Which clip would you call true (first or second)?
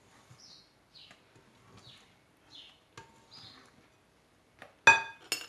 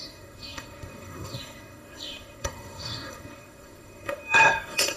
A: first